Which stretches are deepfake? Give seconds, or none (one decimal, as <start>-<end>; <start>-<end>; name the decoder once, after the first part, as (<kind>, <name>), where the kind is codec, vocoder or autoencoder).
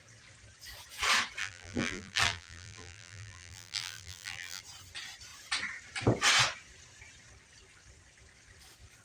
1.4-4.6 (vocoder, BigVGAN v2)